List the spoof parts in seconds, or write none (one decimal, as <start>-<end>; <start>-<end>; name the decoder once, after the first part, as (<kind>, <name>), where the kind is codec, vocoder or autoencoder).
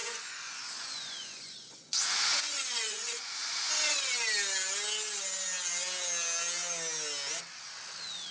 0.0-4.1 (vocoder, Vocos)